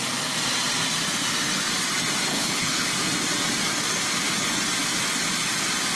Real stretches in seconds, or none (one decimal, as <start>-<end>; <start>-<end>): 0.0-2.3; 2.9-6.0